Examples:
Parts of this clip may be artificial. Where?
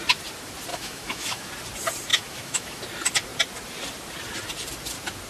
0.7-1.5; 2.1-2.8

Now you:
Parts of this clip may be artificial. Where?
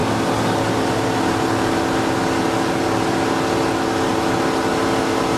none